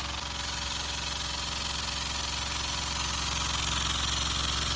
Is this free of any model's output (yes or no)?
yes